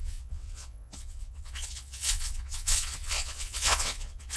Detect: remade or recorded remade